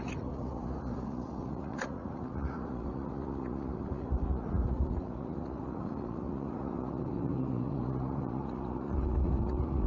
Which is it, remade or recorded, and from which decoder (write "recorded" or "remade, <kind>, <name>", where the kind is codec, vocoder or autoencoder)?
remade, vocoder, Vocos